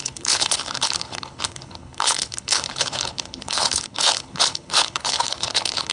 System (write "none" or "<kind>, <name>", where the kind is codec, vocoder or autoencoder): codec, HILCodec